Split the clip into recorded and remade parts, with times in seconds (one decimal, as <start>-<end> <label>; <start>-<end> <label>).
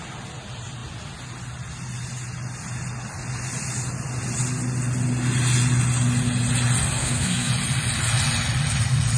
0.0-7.0 recorded; 7.0-7.5 remade; 7.5-9.2 recorded